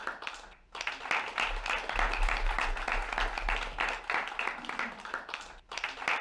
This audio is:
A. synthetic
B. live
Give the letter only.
B